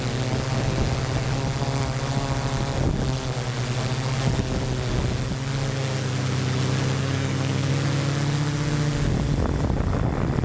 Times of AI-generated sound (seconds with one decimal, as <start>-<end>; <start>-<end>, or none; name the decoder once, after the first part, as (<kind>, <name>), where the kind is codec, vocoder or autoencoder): 7.0-7.7 (codec, SNAC)